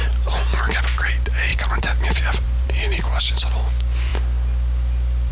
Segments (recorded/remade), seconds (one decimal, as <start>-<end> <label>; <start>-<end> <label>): 0.0-0.8 remade; 0.8-1.5 recorded; 1.5-3.2 remade; 3.2-5.3 recorded